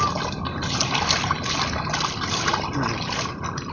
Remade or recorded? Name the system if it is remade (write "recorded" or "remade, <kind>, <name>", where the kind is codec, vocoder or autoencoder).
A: recorded